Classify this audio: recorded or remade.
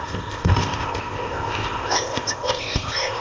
remade